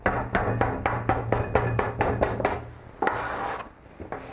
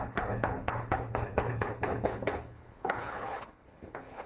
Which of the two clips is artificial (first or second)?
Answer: second